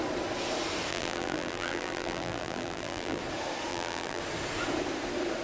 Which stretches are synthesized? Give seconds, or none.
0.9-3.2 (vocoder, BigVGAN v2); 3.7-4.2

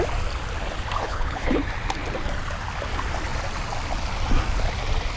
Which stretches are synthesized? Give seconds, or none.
1.0-1.7 (codec, HILCodec)